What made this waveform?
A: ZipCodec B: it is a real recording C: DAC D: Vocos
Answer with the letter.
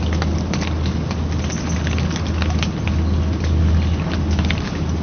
B